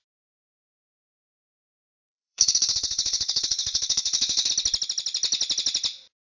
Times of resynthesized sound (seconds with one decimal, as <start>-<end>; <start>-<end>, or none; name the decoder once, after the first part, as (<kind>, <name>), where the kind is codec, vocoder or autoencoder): 0.7-4.5 (codec, SNAC)